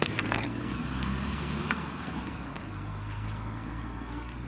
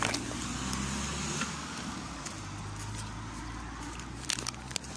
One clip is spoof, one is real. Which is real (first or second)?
second